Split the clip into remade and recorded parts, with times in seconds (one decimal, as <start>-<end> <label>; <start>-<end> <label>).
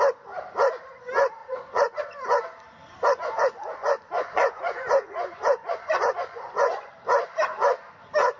0.0-1.4 recorded; 1.4-2.0 remade; 2.0-3.8 recorded; 3.8-6.9 remade; 6.9-8.4 recorded